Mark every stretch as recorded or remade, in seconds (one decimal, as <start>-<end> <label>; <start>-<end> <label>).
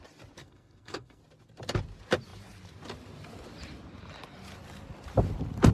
0.0-0.4 recorded; 0.4-1.2 remade; 1.2-5.7 recorded